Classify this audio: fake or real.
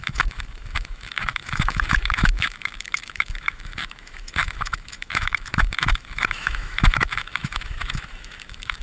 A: fake